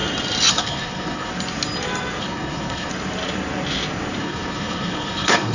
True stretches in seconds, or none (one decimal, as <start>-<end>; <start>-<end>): 0.0-0.5; 1.3-2.2; 2.9-4.2